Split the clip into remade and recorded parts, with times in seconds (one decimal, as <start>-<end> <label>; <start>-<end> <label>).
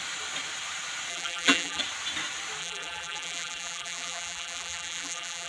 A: 0.0-1.1 recorded; 1.1-1.8 remade; 1.8-2.6 recorded; 2.6-5.5 remade